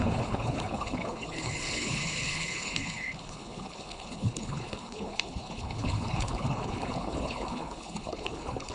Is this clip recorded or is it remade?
remade